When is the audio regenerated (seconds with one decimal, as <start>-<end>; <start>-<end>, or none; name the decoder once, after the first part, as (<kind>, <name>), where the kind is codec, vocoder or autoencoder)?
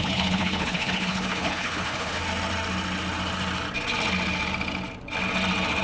0.0-2.2 (codec, HILCodec)